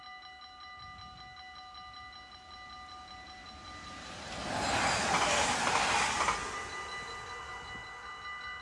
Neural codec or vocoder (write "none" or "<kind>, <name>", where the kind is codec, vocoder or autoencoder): none